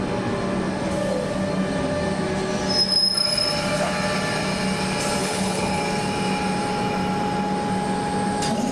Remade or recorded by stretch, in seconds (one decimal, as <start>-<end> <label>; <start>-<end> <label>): 0.0-5.2 recorded; 5.2-5.8 remade; 5.8-8.7 recorded